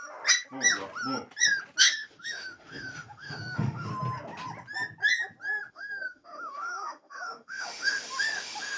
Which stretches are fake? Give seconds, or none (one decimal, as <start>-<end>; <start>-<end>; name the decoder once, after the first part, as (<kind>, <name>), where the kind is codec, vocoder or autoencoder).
1.8-3.9 (autoencoder, DAC-VAE); 5.7-8.8